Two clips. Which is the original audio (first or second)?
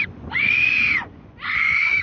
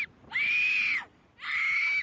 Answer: second